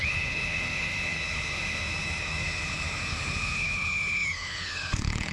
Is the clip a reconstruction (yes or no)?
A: yes